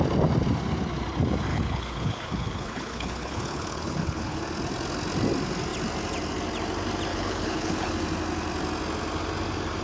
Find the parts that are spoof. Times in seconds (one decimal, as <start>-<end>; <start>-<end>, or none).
1.5-4.4; 7.1-7.9